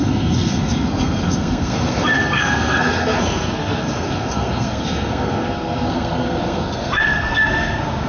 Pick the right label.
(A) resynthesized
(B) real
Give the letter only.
A